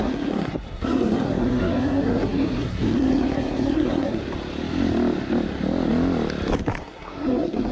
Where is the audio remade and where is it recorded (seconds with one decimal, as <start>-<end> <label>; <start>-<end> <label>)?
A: 0.0-4.2 remade; 4.2-6.8 recorded; 6.8-7.7 remade